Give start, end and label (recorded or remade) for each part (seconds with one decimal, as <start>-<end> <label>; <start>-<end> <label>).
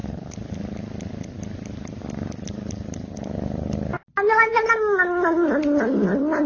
0.0-6.5 recorded